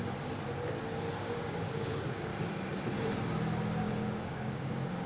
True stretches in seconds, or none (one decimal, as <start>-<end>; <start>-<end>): 0.0-1.2; 2.3-3.8